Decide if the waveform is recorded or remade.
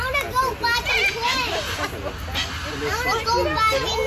recorded